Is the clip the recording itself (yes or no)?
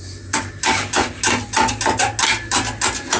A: yes